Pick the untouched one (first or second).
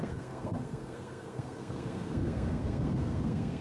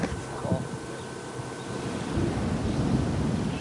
second